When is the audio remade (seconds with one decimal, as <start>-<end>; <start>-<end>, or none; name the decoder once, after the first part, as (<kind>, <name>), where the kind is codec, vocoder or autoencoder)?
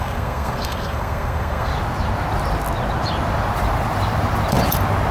0.0-1.7 (codec, SNAC)